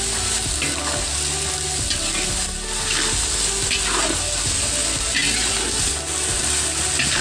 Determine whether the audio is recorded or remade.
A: recorded